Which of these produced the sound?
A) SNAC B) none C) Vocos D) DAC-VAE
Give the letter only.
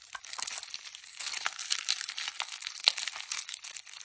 B